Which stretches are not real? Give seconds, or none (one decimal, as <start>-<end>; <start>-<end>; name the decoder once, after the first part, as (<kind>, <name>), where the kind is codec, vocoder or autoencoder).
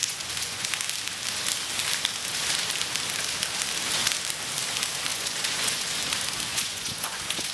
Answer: 0.0-0.7 (vocoder, Vocos); 5.1-6.0; 6.5-7.5